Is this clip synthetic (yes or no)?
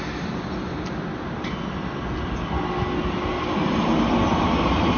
no